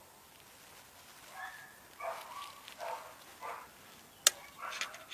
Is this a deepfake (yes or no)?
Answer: no